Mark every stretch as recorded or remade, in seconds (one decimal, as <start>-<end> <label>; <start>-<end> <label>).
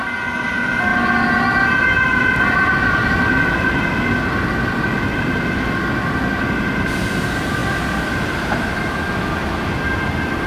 0.0-10.5 recorded